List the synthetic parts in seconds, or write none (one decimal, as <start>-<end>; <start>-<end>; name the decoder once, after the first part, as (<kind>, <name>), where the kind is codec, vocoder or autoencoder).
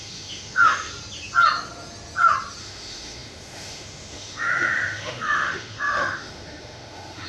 0.0-0.9 (autoencoder, DAC-VAE); 2.6-7.3